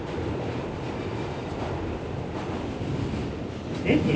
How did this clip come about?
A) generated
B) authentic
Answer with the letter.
B